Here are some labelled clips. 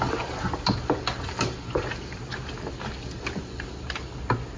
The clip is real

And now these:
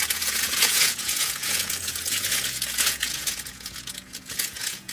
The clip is fake